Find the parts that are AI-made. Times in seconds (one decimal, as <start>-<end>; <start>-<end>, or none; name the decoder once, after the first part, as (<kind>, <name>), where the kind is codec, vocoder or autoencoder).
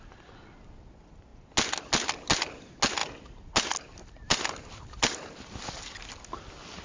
none